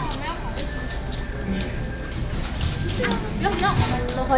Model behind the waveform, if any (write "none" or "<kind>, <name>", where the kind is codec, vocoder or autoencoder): none